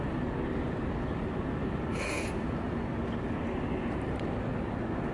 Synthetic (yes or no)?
no